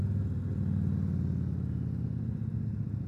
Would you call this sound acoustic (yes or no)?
yes